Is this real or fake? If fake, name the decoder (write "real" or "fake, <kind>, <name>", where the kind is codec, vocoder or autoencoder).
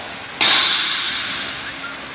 real